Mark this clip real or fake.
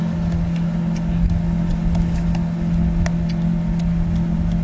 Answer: real